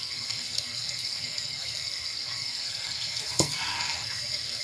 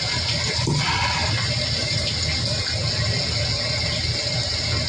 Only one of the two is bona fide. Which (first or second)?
second